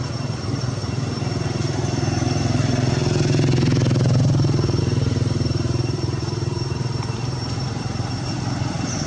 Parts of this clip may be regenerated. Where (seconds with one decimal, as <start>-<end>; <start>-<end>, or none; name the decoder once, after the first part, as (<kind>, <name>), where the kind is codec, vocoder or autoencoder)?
0.0-0.8 (vocoder, BigVGAN v2); 4.8-9.1